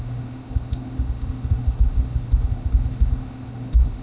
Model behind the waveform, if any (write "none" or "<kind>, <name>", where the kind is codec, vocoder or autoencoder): autoencoder, DAC-VAE